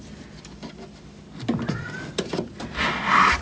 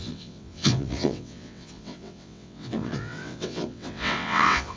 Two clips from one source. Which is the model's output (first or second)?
second